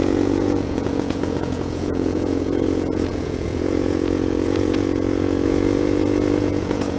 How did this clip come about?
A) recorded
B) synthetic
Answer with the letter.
B